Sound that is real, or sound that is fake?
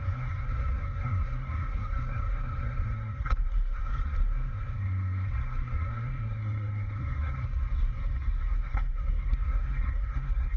fake